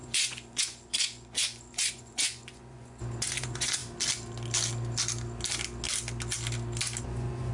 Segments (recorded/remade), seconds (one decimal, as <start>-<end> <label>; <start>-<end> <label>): 0.0-3.8 remade; 3.8-7.0 recorded; 7.0-7.5 remade